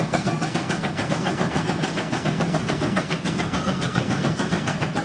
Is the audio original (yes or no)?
no